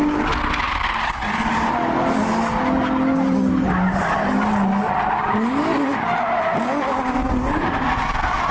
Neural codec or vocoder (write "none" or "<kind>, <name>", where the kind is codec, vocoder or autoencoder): none